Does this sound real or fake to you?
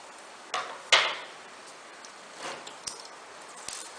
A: real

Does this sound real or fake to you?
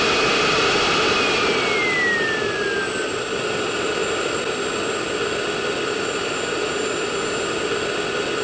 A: real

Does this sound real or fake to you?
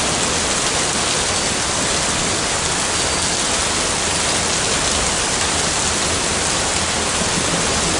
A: real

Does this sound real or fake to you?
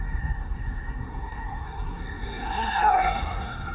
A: fake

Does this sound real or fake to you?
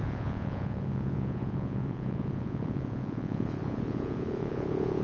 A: fake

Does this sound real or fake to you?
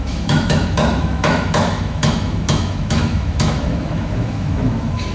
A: fake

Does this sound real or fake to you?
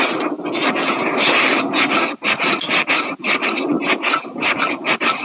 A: real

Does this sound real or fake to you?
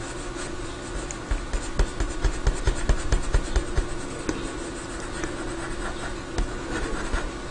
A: real